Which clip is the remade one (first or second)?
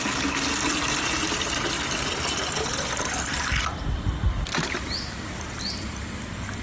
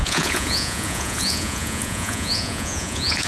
second